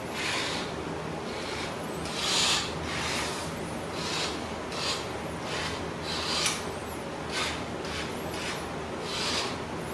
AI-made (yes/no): no